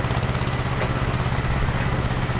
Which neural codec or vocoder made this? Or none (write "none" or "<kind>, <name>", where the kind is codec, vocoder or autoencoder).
none